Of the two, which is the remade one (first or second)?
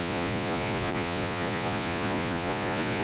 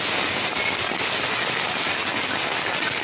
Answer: first